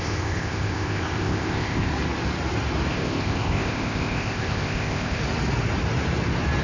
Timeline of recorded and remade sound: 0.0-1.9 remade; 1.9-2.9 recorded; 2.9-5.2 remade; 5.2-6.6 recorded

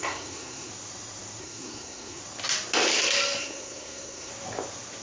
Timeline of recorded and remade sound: 0.0-0.7 remade; 0.7-1.4 recorded; 1.4-2.2 remade; 2.2-3.4 recorded; 3.4-4.3 remade; 4.3-5.0 recorded

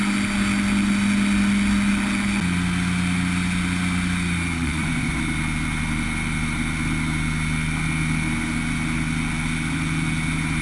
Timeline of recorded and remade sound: 0.0-4.6 recorded; 4.6-5.2 remade; 5.2-10.6 recorded

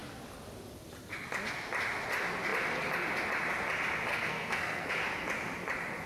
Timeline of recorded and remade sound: 0.0-4.1 recorded; 4.1-4.9 remade; 4.9-6.1 recorded

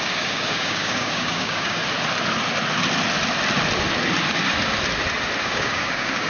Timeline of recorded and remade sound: 0.0-1.8 remade; 1.8-5.4 recorded; 5.4-6.3 remade

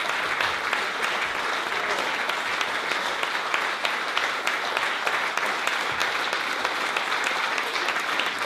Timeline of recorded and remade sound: 0.0-8.5 recorded

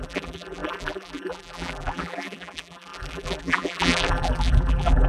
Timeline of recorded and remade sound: 0.0-5.1 remade

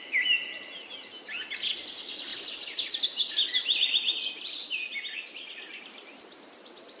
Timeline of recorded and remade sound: 0.0-7.0 recorded